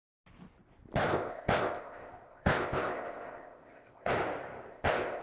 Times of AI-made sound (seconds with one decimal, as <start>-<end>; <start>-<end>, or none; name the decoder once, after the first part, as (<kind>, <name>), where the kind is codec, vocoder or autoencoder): 1.1-4.1 (codec, ZipCodec); 4.7-5.2